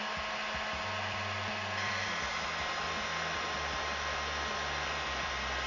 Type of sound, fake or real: real